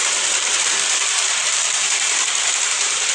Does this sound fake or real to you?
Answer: fake